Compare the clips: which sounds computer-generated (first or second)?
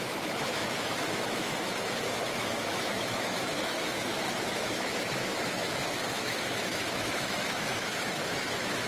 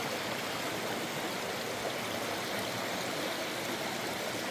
first